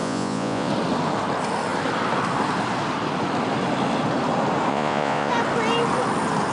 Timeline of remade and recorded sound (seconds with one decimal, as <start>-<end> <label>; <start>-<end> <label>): 0.0-0.7 remade; 0.7-4.7 recorded; 4.7-5.3 remade; 5.3-6.5 recorded